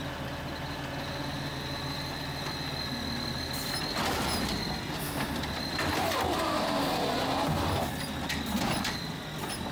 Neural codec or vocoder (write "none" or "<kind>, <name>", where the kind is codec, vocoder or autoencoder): none